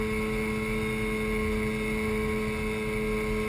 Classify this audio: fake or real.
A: real